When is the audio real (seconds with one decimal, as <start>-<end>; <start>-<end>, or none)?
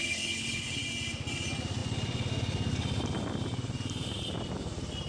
0.8-5.1